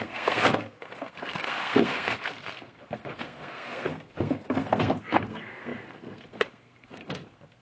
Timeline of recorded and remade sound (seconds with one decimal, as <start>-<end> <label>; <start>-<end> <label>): 0.0-7.6 remade